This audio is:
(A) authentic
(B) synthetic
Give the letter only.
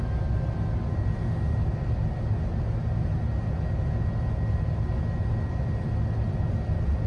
A